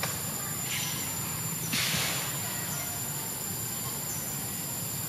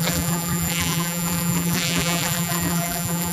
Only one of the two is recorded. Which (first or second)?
first